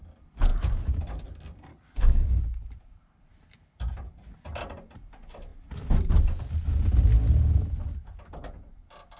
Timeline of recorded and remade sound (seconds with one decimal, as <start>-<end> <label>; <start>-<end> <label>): 0.0-1.7 recorded; 1.7-2.4 remade; 2.4-9.2 recorded